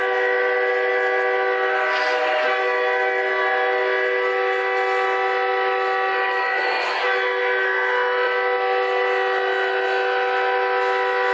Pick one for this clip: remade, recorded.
recorded